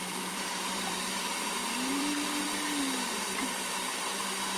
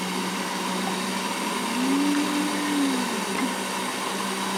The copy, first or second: first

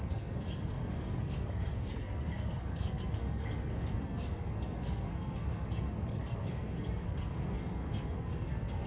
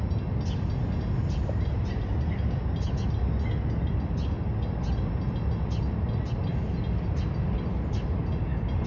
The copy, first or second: first